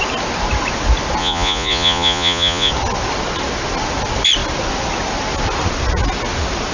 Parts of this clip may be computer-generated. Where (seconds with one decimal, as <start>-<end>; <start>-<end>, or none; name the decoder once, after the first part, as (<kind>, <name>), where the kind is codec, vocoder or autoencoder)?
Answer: 1.2-2.7 (vocoder, Vocos)